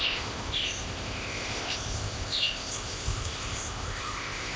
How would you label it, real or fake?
fake